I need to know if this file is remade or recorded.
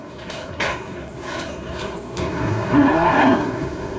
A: remade